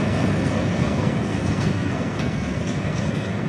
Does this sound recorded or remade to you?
remade